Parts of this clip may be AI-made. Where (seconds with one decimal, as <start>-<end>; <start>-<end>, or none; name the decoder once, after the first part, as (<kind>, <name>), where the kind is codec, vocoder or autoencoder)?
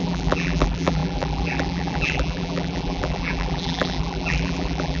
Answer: 0.0-5.0 (vocoder, BigVGAN v2)